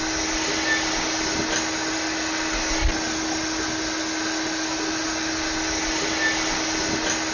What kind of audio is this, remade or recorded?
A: recorded